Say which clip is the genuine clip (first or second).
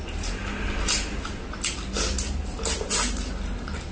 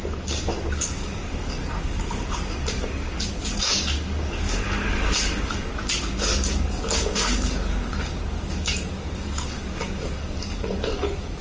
first